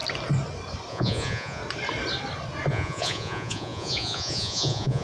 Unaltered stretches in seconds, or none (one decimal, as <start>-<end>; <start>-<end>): 0.0-0.9; 1.6-2.7